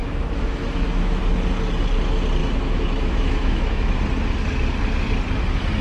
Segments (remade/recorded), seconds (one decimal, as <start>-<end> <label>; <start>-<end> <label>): 0.0-1.2 remade; 1.2-2.4 recorded; 2.4-4.0 remade; 4.0-5.8 recorded